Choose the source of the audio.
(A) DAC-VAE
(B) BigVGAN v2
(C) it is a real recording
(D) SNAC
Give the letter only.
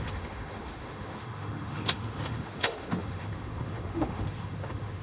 A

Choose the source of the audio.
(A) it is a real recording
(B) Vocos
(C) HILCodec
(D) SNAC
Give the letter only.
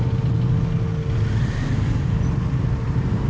A